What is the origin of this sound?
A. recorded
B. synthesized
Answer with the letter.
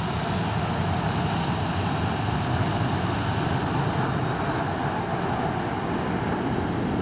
A